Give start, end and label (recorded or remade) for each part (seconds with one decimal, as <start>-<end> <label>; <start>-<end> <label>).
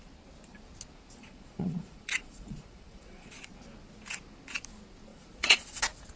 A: 0.0-1.2 recorded; 1.2-3.5 remade; 3.5-5.1 recorded; 5.1-5.8 remade; 5.8-6.2 recorded